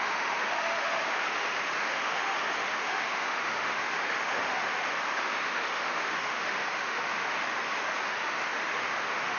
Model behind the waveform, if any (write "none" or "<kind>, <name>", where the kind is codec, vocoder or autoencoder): autoencoder, DAC-VAE